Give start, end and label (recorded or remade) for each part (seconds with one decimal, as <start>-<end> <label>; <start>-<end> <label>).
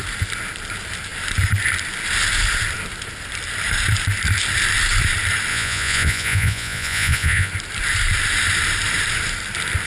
0.0-5.5 recorded; 5.5-7.5 remade; 7.5-9.9 recorded